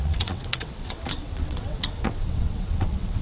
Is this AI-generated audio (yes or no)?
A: yes